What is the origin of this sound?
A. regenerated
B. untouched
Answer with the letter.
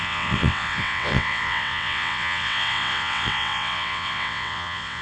A